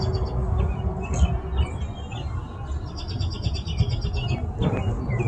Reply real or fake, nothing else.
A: real